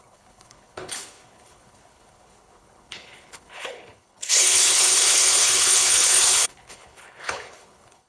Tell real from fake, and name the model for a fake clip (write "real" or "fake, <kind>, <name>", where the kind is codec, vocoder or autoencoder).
fake, codec, HILCodec